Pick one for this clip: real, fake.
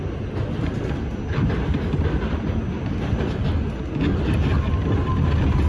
real